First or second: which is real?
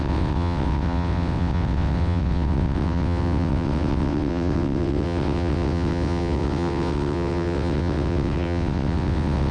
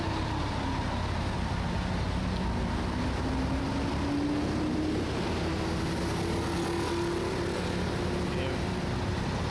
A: second